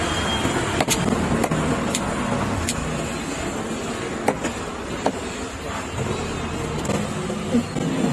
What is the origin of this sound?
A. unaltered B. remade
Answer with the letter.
A